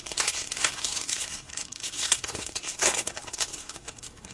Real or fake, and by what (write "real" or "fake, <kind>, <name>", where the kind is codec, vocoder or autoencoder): fake, codec, SNAC